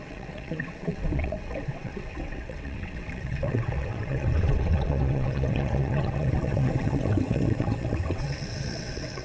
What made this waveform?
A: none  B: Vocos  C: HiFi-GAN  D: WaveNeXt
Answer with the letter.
D